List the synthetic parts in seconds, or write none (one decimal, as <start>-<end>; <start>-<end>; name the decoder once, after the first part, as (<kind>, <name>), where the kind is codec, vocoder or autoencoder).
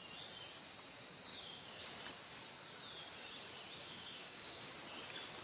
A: 1.3-1.8 (codec, DAC); 3.8-4.7